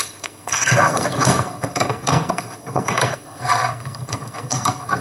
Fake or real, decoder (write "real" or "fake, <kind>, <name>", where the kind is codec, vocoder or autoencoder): fake, codec, SNAC